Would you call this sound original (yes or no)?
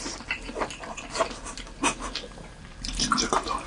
yes